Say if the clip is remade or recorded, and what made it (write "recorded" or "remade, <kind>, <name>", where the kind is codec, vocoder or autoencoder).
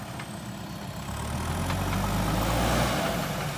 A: recorded